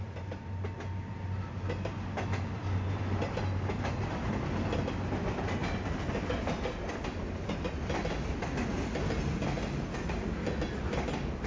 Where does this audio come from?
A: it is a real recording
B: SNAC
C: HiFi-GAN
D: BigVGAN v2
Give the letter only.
A